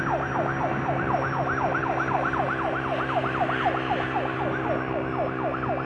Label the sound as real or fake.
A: real